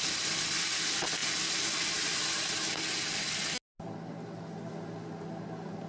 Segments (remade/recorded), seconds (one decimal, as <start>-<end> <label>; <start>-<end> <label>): 0.0-5.9 recorded